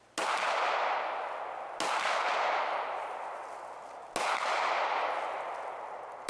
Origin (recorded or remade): recorded